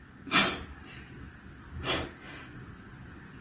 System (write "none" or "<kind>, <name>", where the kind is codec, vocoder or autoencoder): none